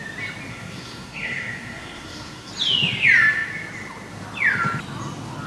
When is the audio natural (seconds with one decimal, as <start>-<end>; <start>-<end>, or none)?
0.0-0.5; 2.5-5.5